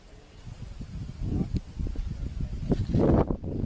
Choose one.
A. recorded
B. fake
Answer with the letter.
A